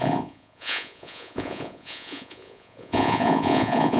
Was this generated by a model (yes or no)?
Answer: yes